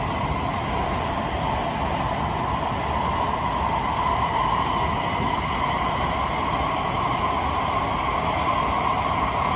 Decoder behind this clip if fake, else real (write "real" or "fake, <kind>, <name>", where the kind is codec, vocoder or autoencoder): real